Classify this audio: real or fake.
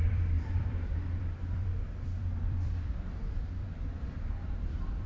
fake